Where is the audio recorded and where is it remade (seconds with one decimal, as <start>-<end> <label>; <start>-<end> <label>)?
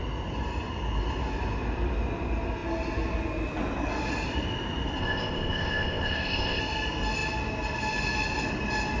0.0-5.0 recorded; 5.0-6.6 remade; 6.6-9.0 recorded